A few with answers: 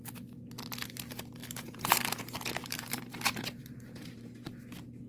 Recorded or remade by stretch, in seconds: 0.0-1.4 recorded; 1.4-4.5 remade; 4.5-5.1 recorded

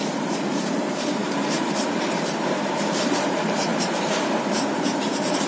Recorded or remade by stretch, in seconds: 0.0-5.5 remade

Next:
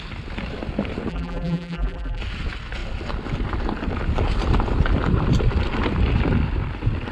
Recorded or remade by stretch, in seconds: 0.0-1.1 recorded; 1.1-2.2 remade; 2.2-7.1 recorded